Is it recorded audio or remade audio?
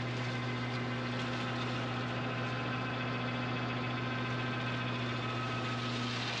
recorded